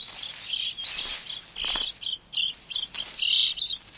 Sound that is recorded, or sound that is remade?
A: recorded